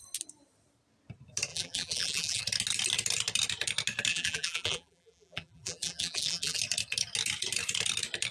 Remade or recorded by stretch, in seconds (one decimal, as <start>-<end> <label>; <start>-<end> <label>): 0.0-1.5 recorded; 1.5-2.4 remade; 2.4-4.1 recorded; 4.1-6.6 remade; 6.6-8.3 recorded